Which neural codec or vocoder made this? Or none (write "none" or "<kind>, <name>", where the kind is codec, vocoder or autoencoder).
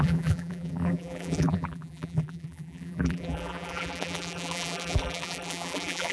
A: vocoder, BigVGAN v2